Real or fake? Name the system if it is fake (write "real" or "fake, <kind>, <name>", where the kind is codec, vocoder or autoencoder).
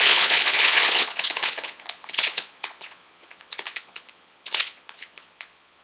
fake, vocoder, Vocos